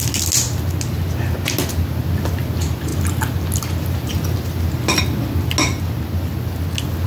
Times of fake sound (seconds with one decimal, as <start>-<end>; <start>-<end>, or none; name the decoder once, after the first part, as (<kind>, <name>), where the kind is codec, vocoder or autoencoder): none